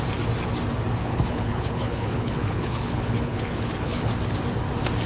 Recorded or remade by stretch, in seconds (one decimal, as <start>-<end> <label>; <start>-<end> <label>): 0.0-1.0 recorded; 1.0-4.1 remade; 4.1-5.1 recorded